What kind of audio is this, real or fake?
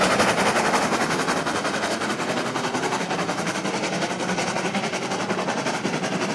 real